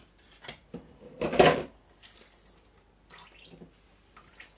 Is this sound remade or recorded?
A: recorded